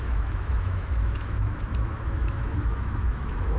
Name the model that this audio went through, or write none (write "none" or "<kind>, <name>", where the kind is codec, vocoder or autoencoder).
autoencoder, DAC-VAE